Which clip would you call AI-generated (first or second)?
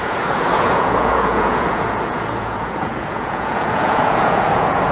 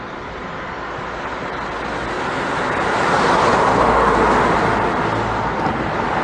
first